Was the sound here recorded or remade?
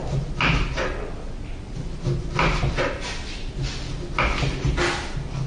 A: recorded